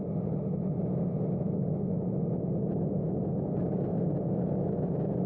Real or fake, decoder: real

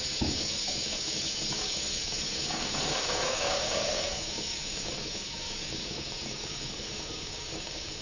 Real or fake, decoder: fake, codec, DAC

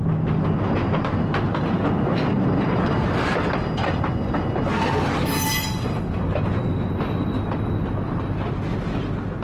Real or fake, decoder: real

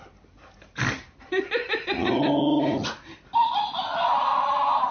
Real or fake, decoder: real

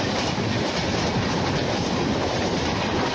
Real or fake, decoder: fake, vocoder, BigVGAN v2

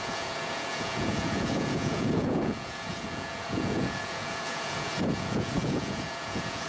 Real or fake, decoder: fake, vocoder, Vocos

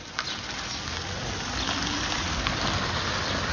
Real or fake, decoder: real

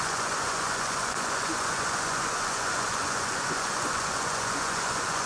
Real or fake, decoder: fake, vocoder, Vocos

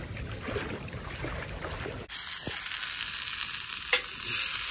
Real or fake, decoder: real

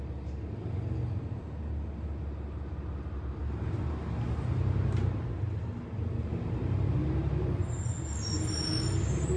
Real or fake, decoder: real